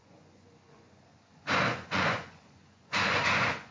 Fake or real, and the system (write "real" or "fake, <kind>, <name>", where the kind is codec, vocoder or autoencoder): fake, vocoder, Vocos